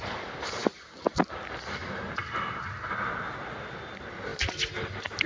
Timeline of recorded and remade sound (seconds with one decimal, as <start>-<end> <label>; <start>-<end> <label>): 0.0-5.3 recorded